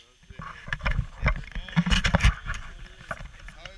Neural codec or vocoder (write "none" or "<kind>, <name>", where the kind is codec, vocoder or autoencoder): none